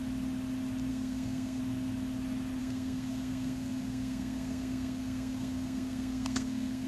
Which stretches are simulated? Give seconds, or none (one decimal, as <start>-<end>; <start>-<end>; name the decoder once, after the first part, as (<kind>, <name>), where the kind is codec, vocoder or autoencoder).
0.9-1.6 (codec, SNAC); 2.6-6.9

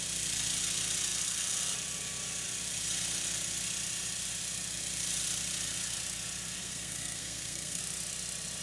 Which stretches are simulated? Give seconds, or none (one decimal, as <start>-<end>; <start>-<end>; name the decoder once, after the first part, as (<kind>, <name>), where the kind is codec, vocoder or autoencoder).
6.6-7.8 (codec, SNAC)

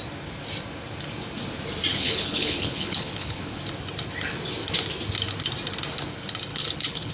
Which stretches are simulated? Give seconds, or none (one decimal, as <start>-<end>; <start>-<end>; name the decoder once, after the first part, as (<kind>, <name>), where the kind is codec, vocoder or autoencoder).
1.9-3.6 (codec, HILCodec); 6.5-7.1